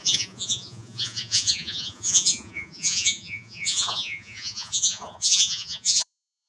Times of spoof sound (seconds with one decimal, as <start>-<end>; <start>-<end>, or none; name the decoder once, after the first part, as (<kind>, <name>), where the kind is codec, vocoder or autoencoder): 0.0-6.5 (vocoder, Vocos)